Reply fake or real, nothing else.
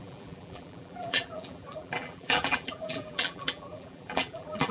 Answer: fake